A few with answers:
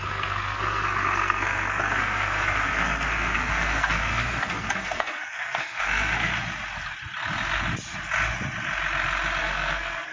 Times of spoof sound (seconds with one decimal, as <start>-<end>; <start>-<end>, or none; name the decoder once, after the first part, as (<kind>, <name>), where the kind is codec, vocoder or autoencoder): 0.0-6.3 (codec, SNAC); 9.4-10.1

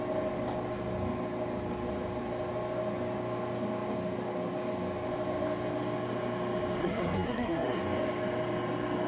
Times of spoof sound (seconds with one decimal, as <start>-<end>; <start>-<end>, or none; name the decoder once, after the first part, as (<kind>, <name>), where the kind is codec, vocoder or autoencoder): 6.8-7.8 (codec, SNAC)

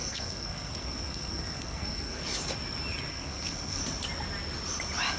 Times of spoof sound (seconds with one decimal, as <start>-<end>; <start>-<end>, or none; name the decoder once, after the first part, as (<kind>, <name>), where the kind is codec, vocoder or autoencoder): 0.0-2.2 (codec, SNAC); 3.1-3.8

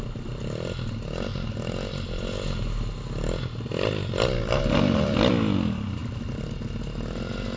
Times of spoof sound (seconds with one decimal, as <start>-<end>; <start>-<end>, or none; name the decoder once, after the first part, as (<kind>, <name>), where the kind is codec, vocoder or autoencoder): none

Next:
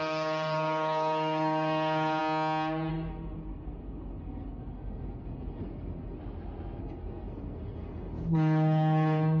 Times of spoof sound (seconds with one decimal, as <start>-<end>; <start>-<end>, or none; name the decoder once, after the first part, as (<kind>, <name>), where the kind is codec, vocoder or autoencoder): 0.0-2.2 (codec, SNAC); 2.9-6.2; 6.8-9.4

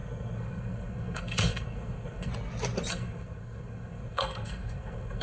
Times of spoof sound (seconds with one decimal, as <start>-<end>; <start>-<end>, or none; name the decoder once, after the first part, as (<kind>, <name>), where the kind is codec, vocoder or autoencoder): 0.0-2.3 (codec, SNAC); 2.9-5.2